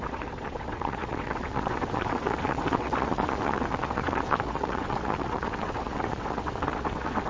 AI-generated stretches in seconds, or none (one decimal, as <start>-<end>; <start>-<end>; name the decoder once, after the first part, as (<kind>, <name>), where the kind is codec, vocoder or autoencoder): 0.0-7.3 (vocoder, WaveNeXt)